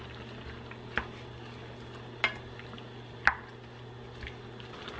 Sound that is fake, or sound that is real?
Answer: real